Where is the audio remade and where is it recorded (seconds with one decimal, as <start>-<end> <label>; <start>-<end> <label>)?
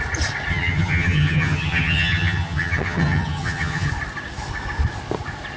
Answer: 0.0-0.5 recorded; 0.5-3.9 remade; 3.9-5.6 recorded